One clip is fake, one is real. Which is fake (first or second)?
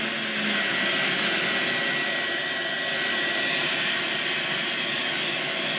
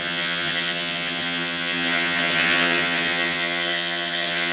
second